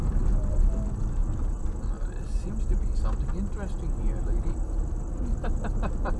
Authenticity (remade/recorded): recorded